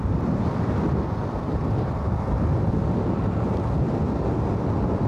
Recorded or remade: recorded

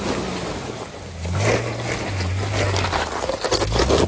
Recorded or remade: recorded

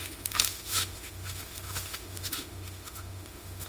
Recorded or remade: remade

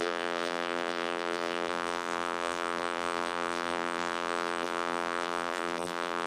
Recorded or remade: remade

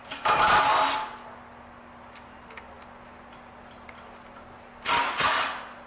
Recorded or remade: recorded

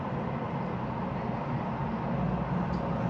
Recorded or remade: recorded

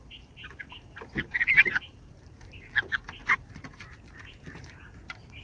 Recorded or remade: remade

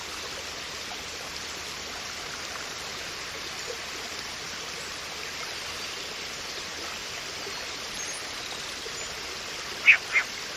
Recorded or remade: recorded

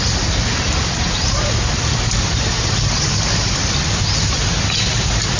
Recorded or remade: recorded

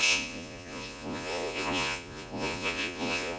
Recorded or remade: remade